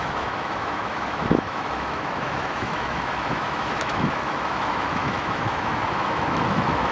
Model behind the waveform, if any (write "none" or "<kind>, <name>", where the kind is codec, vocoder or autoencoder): autoencoder, DAC-VAE